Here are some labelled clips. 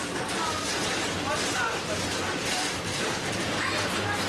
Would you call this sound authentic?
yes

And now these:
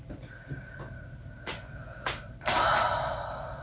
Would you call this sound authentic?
yes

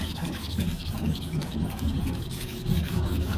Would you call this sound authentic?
no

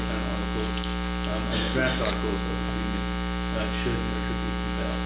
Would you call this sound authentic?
yes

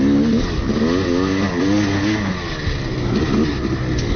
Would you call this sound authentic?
yes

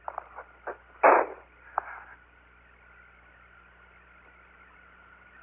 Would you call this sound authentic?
yes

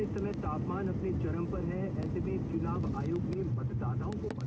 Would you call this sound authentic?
yes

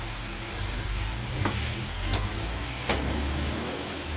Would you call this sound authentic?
no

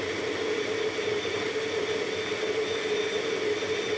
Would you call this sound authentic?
yes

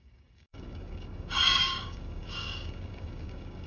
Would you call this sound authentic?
no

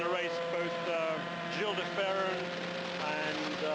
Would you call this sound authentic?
yes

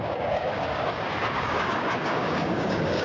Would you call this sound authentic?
no